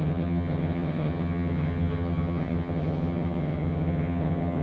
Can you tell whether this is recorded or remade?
remade